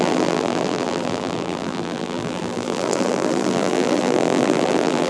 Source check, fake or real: fake